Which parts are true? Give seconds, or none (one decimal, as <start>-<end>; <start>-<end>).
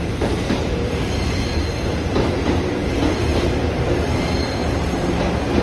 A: 2.8-3.3; 3.8-5.6